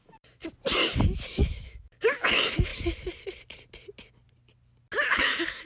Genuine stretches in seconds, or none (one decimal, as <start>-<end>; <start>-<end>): 0.4-1.3; 2.7-5.1